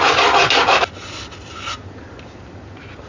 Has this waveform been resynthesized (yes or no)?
no